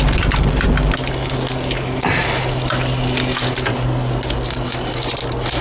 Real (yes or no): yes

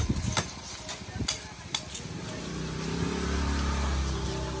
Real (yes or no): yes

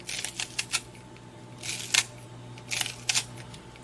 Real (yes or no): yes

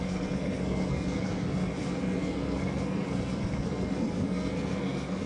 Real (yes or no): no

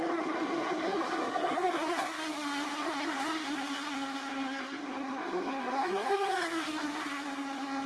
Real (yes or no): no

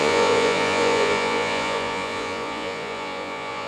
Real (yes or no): no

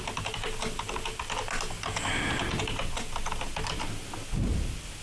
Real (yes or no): yes